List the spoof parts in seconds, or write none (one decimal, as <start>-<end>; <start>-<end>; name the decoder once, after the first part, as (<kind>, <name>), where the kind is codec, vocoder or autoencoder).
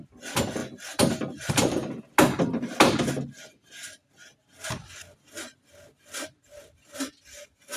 0.6-1.5 (vocoder, BigVGAN v2); 3.8-7.1